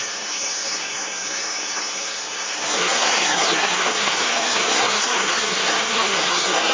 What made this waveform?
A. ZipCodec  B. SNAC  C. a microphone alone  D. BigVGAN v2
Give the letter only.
B